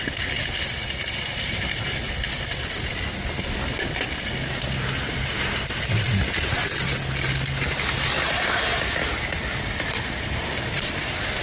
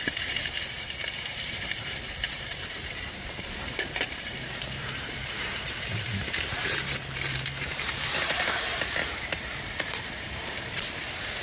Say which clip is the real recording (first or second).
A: first